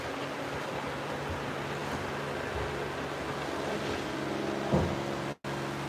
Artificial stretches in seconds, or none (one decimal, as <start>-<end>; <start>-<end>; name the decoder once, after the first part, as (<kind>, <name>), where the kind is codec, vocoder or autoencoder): none